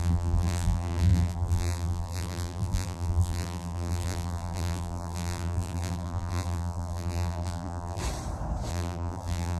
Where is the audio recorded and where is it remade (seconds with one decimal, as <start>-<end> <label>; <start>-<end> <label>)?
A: 0.0-8.0 remade; 8.0-8.7 recorded; 8.7-9.6 remade